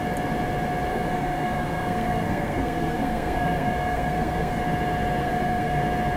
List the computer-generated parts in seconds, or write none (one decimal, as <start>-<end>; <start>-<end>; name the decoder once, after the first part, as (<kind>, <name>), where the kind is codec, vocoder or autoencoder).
0.9-4.6 (codec, SNAC); 5.2-5.8